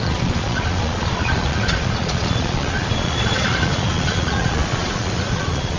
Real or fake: fake